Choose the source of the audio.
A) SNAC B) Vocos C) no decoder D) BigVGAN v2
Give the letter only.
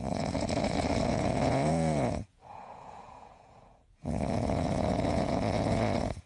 B